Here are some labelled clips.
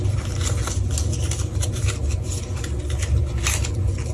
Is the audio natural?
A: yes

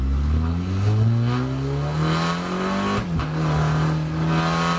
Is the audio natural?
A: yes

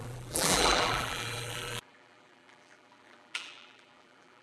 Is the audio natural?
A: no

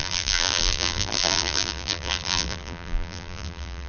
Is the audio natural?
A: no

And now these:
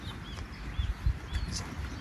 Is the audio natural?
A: yes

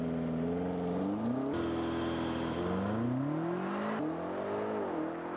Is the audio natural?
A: yes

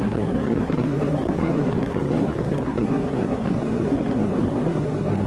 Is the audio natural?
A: no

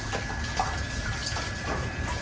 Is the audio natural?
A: yes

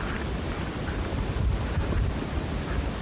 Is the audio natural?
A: yes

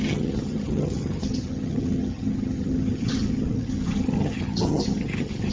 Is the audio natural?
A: no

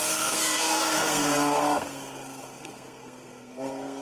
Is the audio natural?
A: no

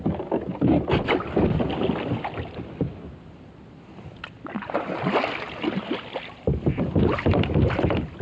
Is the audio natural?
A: yes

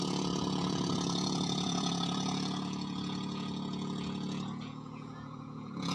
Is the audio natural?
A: no